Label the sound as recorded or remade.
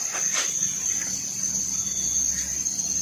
recorded